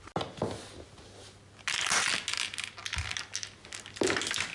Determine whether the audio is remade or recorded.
recorded